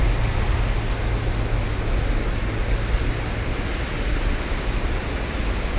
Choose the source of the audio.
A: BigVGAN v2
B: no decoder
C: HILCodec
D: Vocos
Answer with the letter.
B